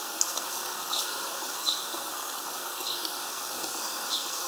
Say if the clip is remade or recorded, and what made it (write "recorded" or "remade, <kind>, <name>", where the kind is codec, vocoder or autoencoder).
remade, codec, SNAC